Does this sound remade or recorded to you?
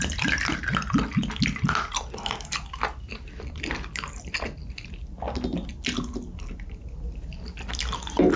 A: recorded